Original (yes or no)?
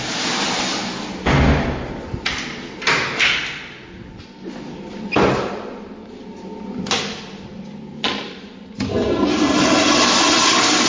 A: yes